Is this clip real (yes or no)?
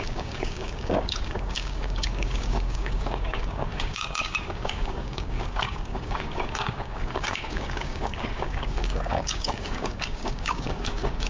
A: no